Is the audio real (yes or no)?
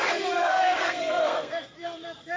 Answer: no